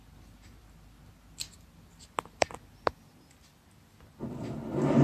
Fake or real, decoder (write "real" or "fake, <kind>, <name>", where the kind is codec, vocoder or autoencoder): real